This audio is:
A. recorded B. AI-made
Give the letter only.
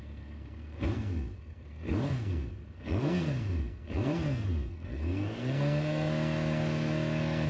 B